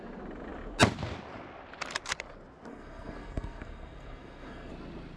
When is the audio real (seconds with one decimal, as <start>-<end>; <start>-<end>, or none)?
0.0-2.7; 4.7-5.2